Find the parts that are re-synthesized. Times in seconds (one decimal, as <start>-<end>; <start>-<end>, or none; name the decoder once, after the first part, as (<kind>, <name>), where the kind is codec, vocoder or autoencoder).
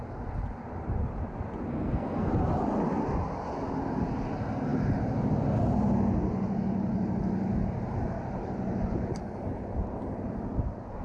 1.7-2.3 (codec, SNAC)